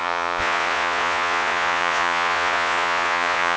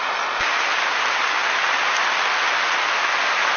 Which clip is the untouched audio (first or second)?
second